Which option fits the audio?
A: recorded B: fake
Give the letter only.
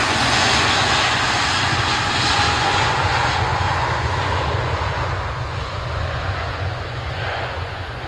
B